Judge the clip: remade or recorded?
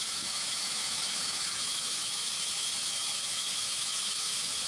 remade